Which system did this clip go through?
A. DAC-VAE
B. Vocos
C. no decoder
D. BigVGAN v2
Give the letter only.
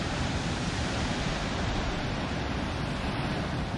D